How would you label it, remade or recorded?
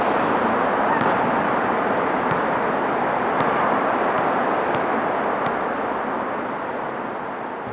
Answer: recorded